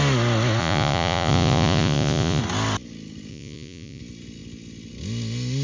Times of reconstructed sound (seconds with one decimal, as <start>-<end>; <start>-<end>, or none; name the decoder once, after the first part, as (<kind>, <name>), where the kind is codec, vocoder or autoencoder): 0.6-2.4 (vocoder, Vocos); 3.3-4.0